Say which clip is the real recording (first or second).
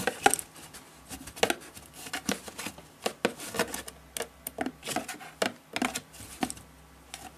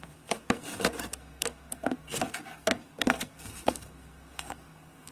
first